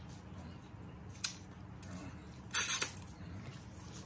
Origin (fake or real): real